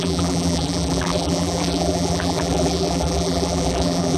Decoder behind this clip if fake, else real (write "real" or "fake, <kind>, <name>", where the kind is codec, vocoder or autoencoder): fake, vocoder, BigVGAN v2